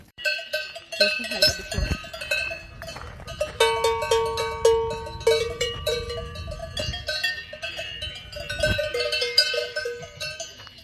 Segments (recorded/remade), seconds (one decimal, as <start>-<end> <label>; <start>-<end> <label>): 0.0-2.0 remade; 2.0-5.4 recorded; 5.4-6.6 remade; 6.6-7.3 recorded; 7.3-10.8 remade